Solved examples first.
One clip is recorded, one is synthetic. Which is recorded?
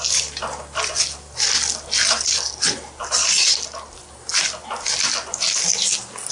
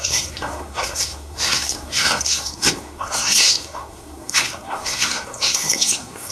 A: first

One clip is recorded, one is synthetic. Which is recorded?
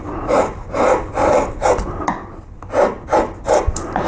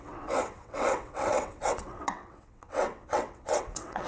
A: first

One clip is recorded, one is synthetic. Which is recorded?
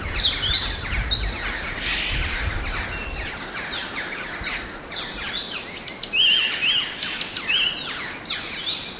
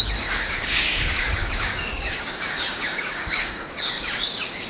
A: first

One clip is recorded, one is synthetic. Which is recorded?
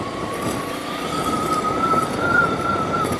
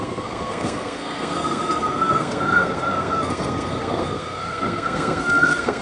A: first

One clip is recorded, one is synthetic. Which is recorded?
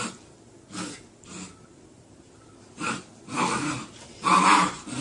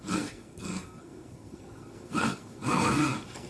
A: first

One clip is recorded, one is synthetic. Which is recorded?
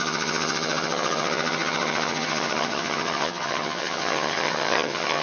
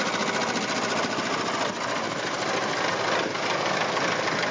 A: second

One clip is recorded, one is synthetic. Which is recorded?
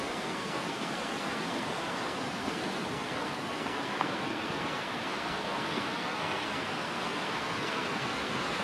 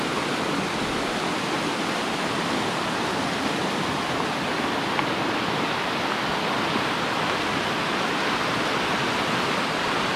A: second